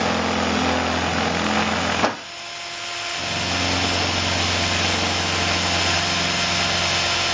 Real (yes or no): yes